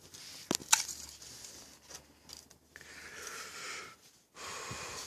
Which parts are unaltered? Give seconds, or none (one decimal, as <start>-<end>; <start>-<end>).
0.0-5.1

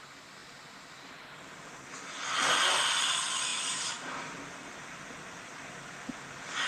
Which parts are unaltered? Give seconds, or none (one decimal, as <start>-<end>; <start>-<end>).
0.0-3.5; 4.2-6.7

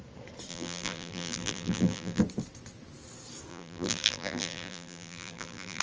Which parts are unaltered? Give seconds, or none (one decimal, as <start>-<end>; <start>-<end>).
0.0-0.5; 2.2-3.5

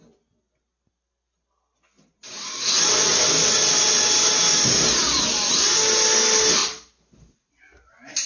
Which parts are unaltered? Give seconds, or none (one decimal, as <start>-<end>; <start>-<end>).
0.0-8.3

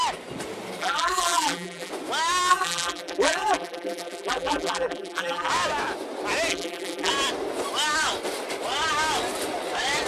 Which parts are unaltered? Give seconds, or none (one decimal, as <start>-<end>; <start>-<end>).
0.0-0.8; 1.9-2.5; 5.5-6.5; 7.1-10.1

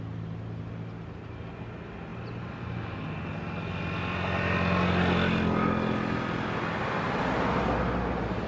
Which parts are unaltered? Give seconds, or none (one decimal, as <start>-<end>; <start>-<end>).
0.0-8.5

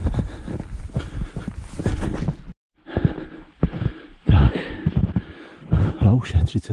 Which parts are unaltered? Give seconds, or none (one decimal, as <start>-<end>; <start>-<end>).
1.8-2.6